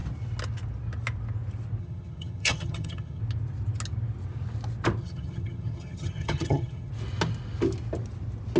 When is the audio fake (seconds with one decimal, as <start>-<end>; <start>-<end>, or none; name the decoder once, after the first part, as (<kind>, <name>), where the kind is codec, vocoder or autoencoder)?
1.8-3.2 (vocoder, HiFi-GAN); 5.0-6.9